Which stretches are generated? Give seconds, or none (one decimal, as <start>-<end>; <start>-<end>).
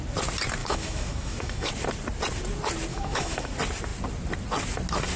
0.6-1.7; 2.9-3.5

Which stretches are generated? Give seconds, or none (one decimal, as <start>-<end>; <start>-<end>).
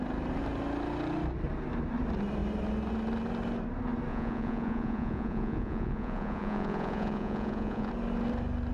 4.1-7.9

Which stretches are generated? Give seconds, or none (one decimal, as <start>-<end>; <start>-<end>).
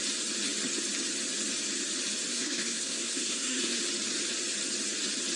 2.3-3.8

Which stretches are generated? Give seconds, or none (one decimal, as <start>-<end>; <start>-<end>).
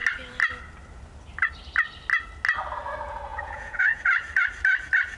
3.3-4.0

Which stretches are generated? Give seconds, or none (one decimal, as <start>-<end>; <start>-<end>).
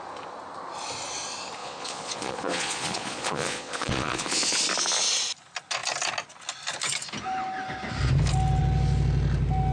1.6-4.6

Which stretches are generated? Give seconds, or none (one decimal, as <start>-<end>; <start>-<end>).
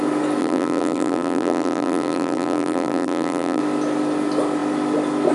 0.4-3.6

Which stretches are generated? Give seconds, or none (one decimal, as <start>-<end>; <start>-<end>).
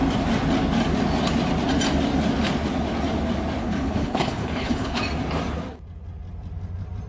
3.6-5.0